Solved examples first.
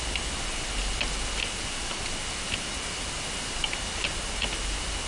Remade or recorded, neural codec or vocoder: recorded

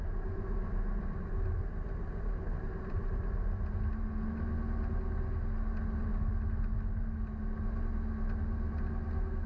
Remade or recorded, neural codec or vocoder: recorded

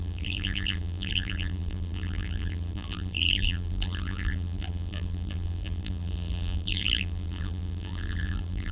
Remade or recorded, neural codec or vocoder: remade, vocoder, BigVGAN v2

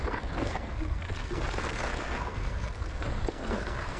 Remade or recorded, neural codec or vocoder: remade, codec, SNAC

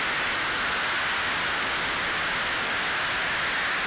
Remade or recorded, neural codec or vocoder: recorded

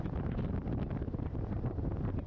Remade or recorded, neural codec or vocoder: recorded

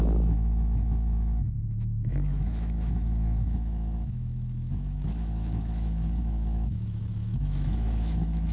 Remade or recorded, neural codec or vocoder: remade, autoencoder, DAC-VAE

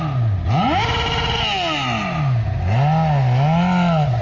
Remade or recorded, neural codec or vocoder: recorded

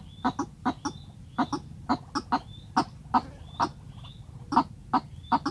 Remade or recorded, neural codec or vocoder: recorded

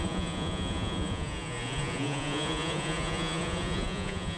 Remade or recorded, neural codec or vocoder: remade, vocoder, Vocos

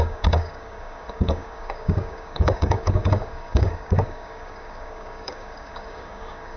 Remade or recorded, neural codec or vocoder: remade, codec, DAC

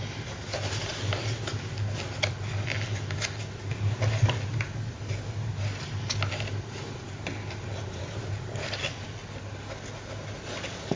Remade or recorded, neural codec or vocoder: recorded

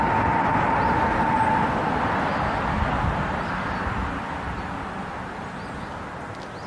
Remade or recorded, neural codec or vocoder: recorded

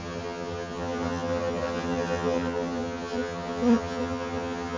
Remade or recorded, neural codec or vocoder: remade, vocoder, HiFi-GAN